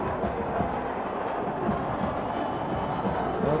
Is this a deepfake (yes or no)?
no